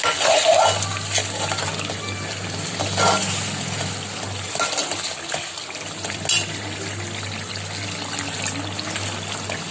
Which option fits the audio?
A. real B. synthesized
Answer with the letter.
A